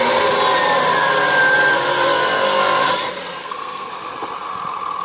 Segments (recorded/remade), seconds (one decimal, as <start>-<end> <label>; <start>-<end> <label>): 0.0-3.4 recorded; 3.4-3.9 remade; 3.9-5.0 recorded